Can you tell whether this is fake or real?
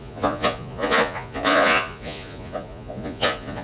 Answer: fake